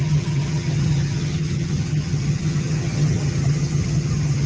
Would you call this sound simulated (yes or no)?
yes